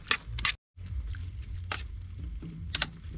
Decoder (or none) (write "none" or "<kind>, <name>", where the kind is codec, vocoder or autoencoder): none